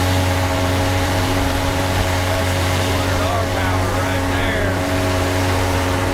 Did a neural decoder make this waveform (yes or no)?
yes